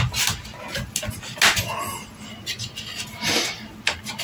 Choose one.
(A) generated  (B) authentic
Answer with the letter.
B